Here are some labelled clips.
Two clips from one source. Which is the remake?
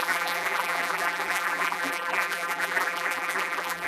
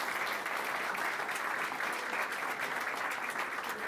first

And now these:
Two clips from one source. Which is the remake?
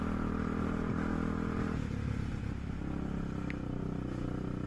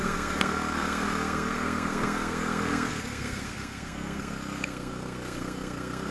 second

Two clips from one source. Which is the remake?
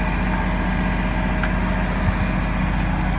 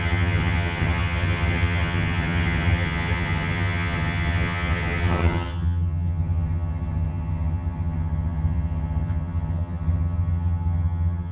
second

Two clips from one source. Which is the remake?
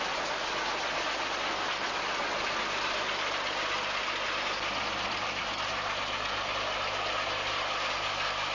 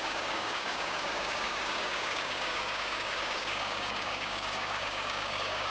second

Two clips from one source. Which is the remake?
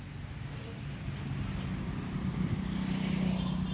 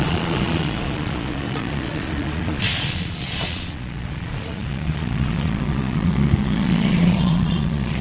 second